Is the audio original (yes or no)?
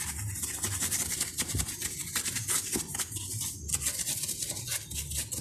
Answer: yes